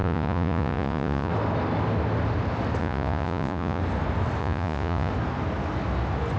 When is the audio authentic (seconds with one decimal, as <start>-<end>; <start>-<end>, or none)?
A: 1.3-2.8; 3.8-4.4; 5.1-6.4